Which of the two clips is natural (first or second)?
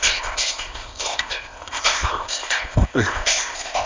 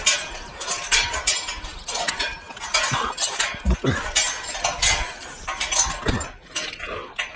second